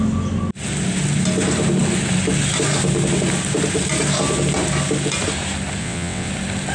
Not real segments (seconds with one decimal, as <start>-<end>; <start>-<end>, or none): 5.8-6.3